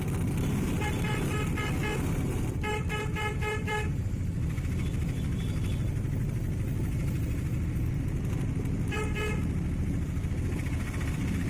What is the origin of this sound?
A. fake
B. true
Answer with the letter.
A